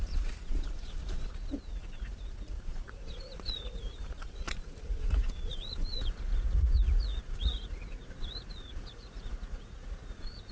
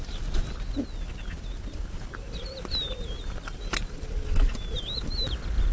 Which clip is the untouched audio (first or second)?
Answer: second